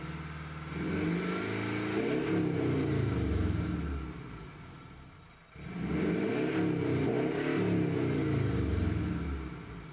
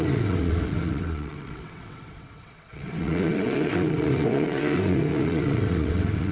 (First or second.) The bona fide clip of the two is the first